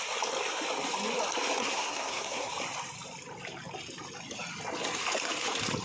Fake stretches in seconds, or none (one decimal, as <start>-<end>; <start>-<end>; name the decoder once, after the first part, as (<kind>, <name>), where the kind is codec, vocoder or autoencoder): 1.6-2.5 (codec, SNAC)

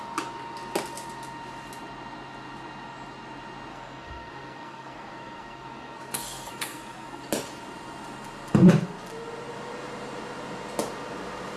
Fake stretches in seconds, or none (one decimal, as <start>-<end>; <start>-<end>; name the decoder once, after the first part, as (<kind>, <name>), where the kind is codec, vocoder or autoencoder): 3.7-7.2 (codec, SNAC)